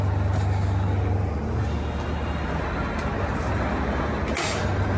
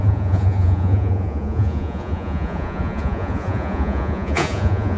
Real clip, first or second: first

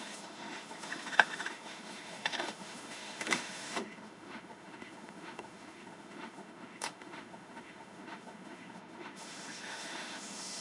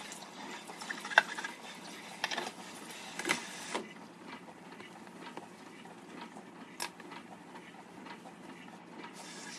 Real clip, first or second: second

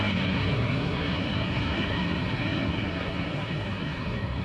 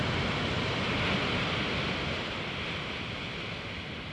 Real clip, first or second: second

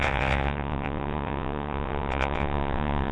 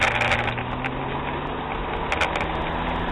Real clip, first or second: second